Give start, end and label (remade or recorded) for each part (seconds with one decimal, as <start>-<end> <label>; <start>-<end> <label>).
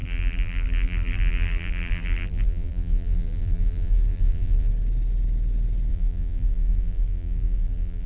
0.0-4.7 remade; 4.7-5.9 recorded; 5.9-8.1 remade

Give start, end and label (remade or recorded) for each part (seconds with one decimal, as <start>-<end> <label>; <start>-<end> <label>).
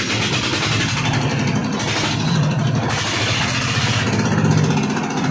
0.0-5.3 remade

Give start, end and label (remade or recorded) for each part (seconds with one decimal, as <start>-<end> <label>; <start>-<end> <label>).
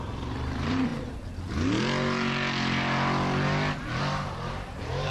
0.0-0.9 remade; 0.9-4.0 recorded; 4.0-5.1 remade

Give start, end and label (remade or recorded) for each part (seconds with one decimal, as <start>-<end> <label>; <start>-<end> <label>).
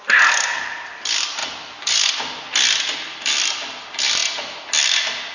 0.0-1.4 recorded; 1.4-2.1 remade; 2.1-5.3 recorded